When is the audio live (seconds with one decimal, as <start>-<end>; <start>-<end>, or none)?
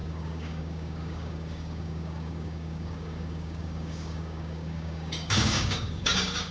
none